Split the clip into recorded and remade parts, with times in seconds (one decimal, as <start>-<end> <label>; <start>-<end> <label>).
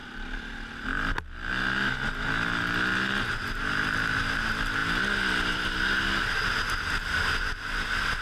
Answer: 0.0-8.2 recorded